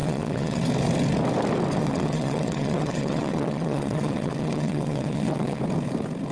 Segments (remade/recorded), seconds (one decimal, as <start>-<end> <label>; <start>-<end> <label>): 0.0-0.6 remade; 0.6-1.8 recorded; 1.8-5.6 remade; 5.6-6.3 recorded